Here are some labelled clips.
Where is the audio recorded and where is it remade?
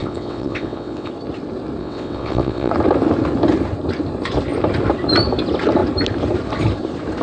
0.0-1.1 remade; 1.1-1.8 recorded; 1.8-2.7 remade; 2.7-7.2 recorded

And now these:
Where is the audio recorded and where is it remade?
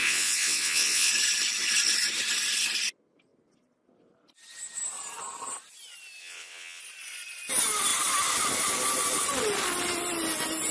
0.0-1.1 remade; 1.1-6.2 recorded; 6.2-6.8 remade; 6.8-10.7 recorded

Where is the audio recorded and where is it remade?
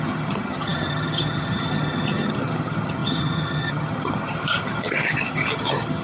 0.0-6.0 remade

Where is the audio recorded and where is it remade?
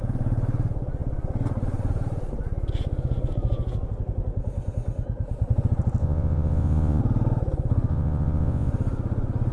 0.0-6.0 recorded; 6.0-7.0 remade; 7.0-7.9 recorded; 7.9-8.7 remade; 8.7-9.5 recorded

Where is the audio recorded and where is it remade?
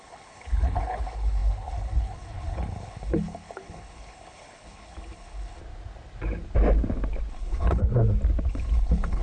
0.0-5.6 remade; 5.6-7.3 recorded; 7.3-7.8 remade; 7.8-8.5 recorded; 8.5-9.2 remade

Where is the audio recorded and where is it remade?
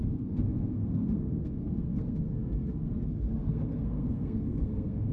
0.0-5.1 remade